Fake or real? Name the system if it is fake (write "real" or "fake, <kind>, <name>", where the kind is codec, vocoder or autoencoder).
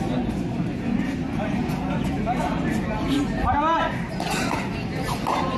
real